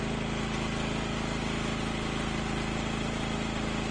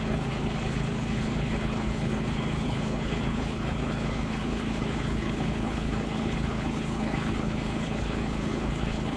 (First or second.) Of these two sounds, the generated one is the second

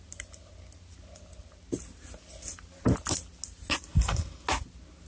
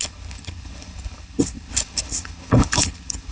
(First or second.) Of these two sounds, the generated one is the second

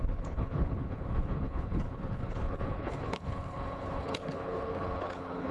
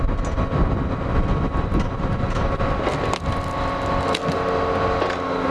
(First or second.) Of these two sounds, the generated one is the first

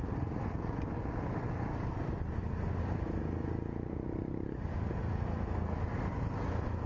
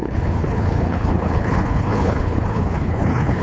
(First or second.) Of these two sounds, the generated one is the second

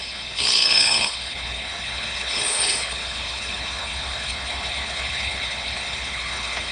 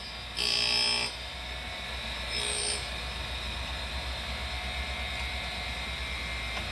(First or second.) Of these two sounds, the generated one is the first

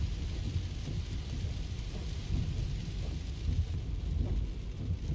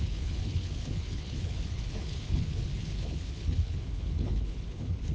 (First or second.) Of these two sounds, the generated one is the second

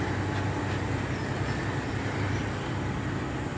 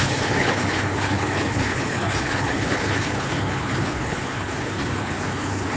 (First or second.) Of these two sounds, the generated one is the second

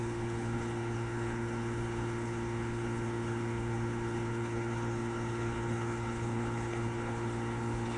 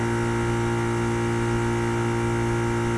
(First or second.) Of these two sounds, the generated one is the first